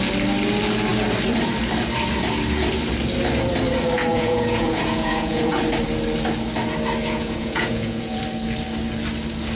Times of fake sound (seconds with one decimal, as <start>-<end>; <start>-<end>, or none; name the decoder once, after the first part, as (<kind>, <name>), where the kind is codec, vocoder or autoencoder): 4.1-5.6 (vocoder, Vocos); 7.0-8.2